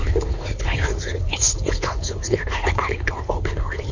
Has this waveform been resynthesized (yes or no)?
yes